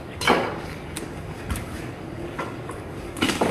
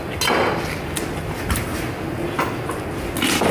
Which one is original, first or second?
second